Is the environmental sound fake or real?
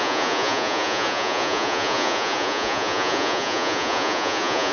fake